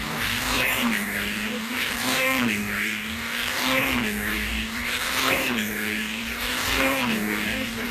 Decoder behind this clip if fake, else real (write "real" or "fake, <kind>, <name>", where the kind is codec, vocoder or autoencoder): fake, codec, DAC